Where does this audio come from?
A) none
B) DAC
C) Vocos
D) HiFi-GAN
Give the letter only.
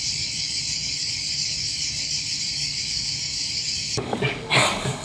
B